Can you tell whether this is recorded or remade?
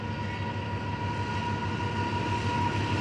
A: recorded